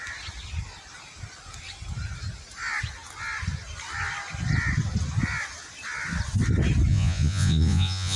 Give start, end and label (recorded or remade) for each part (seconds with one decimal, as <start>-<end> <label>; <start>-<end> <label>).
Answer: 0.0-6.9 recorded; 6.9-8.2 remade